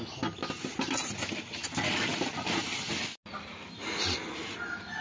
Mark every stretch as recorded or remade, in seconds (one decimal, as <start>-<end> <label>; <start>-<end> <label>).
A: 0.0-5.0 recorded